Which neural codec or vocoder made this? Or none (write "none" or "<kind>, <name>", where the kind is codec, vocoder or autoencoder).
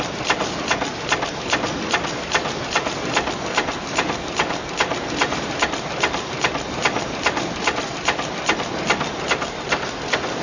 none